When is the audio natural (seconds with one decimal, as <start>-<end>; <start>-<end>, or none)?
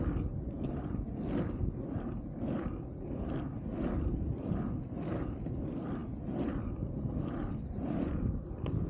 0.0-8.9